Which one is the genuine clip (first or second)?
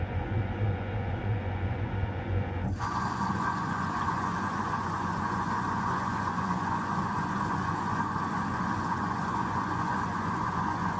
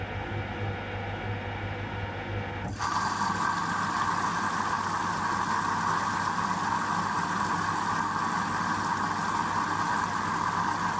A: second